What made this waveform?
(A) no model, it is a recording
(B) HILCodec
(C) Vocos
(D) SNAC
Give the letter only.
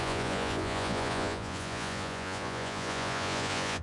C